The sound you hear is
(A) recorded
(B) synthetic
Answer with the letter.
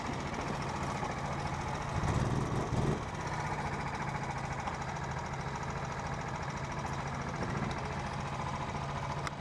A